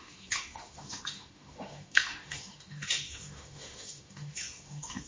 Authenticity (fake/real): fake